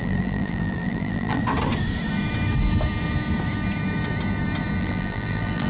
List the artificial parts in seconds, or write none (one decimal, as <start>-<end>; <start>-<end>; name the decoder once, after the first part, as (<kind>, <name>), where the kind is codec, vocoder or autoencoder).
0.0-1.4 (vocoder, BigVGAN v2); 4.8-5.7